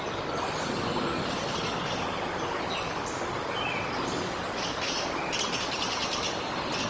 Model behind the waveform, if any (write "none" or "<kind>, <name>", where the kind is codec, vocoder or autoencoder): none